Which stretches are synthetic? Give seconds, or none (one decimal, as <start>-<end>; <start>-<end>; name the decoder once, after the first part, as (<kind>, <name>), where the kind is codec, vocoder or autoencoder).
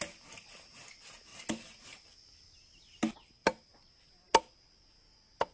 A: 1.3-2.0 (vocoder, BigVGAN v2)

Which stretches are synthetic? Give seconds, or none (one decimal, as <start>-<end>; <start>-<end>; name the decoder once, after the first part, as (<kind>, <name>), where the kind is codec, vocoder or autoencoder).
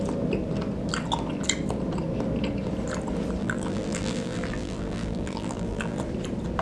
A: 3.4-6.0 (vocoder, BigVGAN v2)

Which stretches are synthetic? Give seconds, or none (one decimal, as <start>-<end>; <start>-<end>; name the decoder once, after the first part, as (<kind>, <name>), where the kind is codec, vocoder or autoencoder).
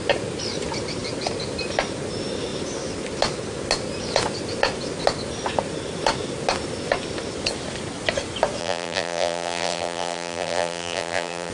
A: 8.6-11.5 (vocoder, BigVGAN v2)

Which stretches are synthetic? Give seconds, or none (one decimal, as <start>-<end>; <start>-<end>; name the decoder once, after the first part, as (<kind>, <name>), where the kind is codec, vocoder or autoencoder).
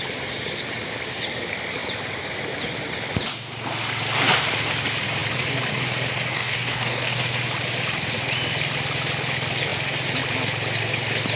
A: 6.3-7.3 (codec, DAC)